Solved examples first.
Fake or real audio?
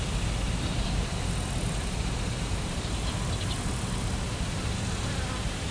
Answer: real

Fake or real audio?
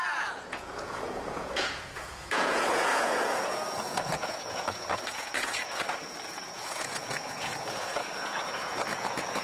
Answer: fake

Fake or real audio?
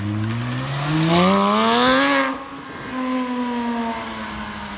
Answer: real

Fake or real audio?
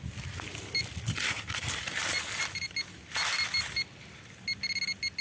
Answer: real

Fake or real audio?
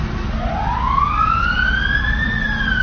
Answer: real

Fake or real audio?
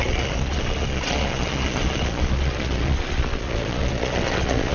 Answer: fake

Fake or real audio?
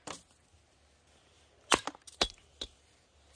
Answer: real